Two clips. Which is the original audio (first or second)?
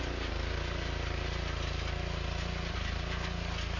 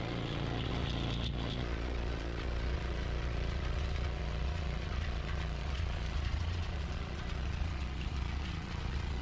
first